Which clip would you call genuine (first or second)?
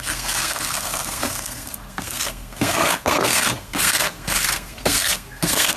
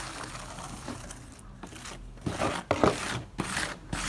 second